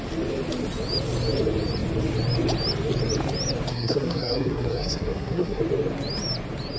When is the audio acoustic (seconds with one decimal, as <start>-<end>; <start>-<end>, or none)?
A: 0.0-3.7; 5.6-6.8